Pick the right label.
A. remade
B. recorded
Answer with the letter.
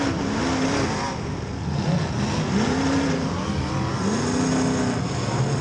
B